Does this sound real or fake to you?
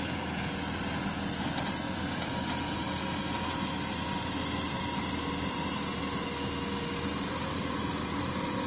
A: real